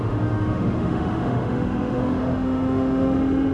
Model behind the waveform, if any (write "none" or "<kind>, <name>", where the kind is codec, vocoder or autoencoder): autoencoder, DAC-VAE